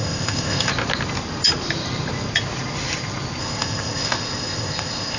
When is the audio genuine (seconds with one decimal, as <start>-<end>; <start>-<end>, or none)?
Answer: 0.7-3.4

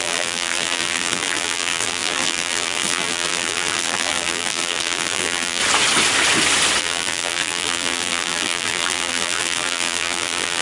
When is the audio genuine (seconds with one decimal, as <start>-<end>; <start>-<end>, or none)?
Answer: 5.6-6.8

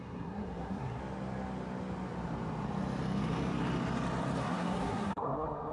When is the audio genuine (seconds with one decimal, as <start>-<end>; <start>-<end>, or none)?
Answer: 1.0-4.4

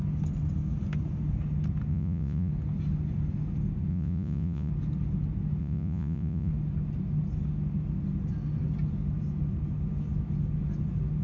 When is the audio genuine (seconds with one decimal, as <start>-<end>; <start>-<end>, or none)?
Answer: 0.0-1.9; 2.5-3.9; 4.7-5.6; 6.5-11.2

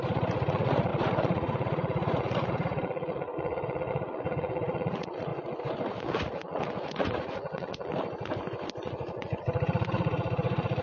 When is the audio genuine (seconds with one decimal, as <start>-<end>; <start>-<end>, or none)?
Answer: 5.3-6.0; 7.9-8.8

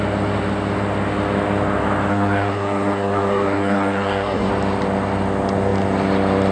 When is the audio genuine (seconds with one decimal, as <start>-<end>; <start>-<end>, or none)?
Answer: 0.0-2.1; 4.5-6.5